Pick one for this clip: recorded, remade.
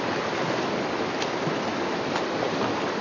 recorded